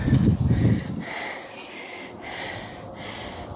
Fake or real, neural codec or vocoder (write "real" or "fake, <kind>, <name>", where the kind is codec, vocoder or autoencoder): real